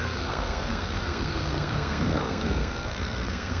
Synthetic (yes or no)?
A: yes